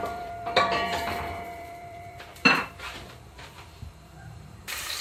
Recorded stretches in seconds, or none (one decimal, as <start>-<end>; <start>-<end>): none